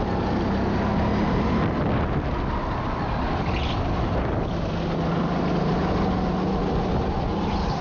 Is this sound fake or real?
real